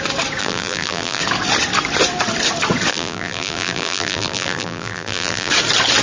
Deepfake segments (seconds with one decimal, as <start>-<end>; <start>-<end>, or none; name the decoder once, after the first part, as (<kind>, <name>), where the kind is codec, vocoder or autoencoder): 0.4-1.2 (vocoder, BigVGAN v2); 2.9-5.5